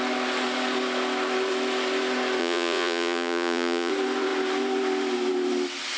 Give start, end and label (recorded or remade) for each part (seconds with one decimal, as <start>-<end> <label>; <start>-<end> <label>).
0.0-2.4 recorded; 2.4-3.9 remade; 3.9-6.0 recorded